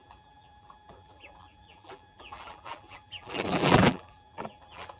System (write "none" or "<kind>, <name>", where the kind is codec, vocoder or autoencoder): vocoder, BigVGAN v2